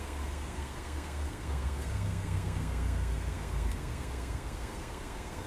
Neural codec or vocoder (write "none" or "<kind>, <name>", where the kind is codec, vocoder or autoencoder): codec, SNAC